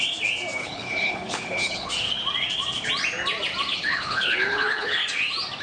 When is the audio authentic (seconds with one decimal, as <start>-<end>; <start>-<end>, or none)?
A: 0.0-0.6; 1.9-3.7; 5.0-5.6